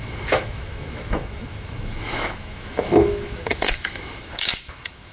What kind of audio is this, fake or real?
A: fake